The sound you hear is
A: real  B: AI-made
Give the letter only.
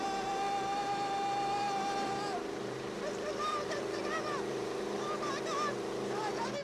B